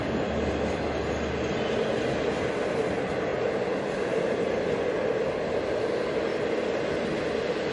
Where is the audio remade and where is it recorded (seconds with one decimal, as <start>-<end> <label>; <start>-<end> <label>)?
0.0-7.7 recorded